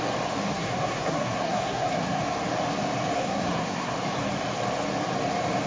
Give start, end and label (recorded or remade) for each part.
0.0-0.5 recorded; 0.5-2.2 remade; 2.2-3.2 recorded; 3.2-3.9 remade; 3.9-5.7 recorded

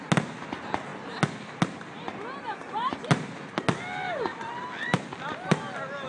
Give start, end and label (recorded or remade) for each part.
0.0-6.1 recorded

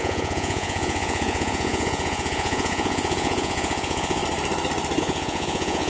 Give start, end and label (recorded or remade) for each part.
0.0-4.2 remade; 4.2-5.0 recorded; 5.0-5.9 remade